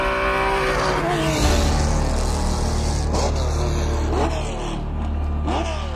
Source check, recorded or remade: recorded